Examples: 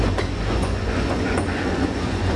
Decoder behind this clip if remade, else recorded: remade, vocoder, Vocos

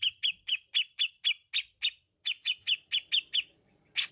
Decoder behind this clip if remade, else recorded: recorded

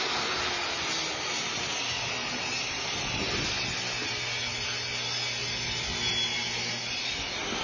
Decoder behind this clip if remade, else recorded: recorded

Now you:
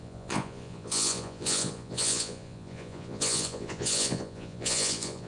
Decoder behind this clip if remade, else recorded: remade, vocoder, Vocos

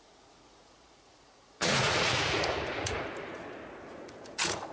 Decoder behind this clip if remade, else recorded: remade, vocoder, Vocos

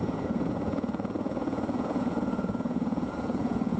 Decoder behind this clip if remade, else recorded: remade, vocoder, Vocos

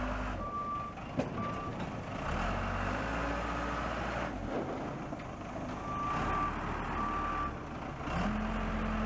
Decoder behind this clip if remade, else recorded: recorded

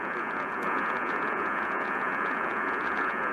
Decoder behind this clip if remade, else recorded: remade, vocoder, Vocos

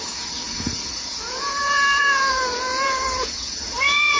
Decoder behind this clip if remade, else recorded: remade, vocoder, Vocos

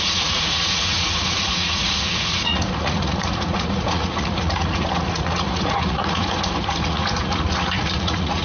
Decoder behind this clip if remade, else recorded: remade, vocoder, Vocos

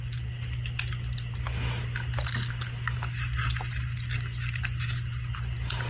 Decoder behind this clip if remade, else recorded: recorded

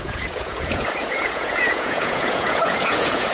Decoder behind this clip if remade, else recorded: remade, vocoder, Vocos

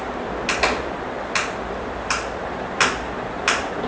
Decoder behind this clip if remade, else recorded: recorded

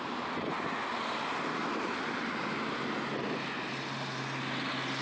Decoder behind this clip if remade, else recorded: recorded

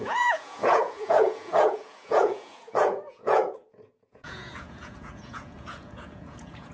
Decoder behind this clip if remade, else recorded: remade, vocoder, Vocos